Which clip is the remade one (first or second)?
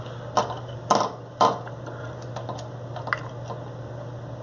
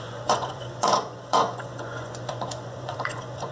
second